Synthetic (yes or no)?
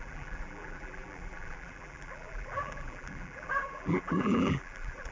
yes